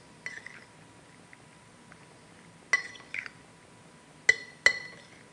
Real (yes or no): yes